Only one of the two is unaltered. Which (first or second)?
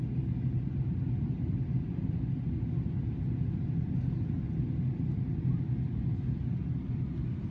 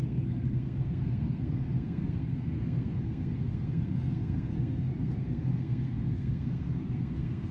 first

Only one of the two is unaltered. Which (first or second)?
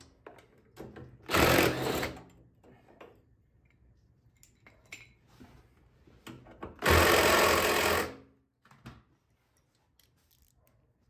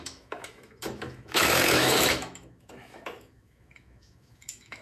first